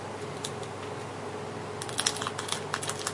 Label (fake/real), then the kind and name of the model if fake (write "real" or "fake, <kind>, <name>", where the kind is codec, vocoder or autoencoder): real